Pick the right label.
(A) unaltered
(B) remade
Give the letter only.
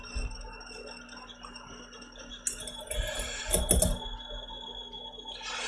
A